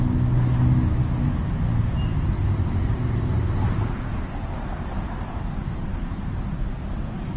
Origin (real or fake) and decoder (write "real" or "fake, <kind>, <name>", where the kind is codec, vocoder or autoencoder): real